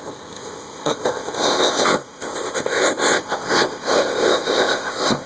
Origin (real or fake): fake